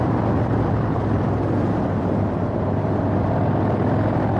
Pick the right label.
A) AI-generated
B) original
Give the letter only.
A